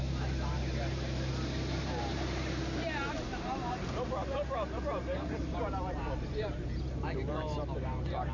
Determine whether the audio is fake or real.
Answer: fake